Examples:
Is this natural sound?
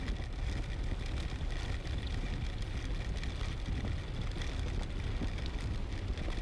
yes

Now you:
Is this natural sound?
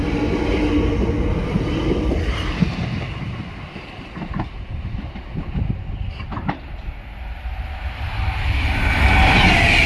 yes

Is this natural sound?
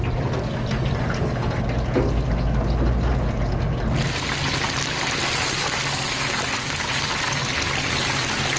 yes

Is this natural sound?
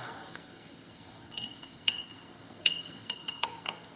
no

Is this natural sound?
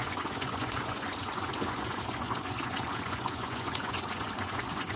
no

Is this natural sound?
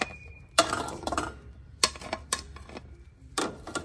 no